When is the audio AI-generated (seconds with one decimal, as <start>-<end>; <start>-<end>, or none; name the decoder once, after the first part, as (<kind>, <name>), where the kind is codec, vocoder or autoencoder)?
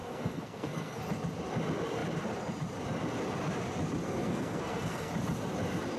0.0-1.0 (codec, SNAC); 4.0-5.1